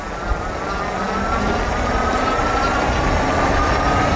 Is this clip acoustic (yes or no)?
yes